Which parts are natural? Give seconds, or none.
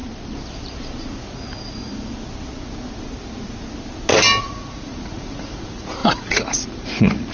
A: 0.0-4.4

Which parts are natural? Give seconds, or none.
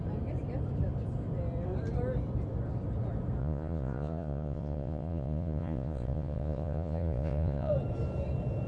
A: 0.0-3.4; 7.7-8.7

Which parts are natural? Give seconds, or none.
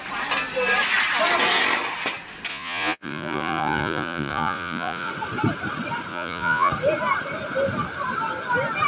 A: 0.0-2.5; 5.1-6.1; 6.7-8.9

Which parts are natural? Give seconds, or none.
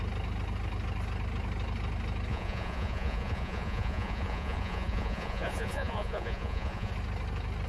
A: 0.0-2.3; 6.9-7.7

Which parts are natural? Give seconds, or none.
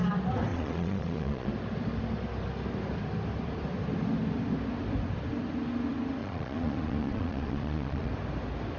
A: 0.0-0.5; 1.5-6.2; 8.1-8.8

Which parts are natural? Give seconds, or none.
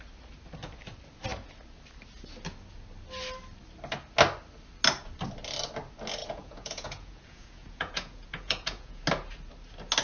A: 0.0-6.2; 9.0-10.0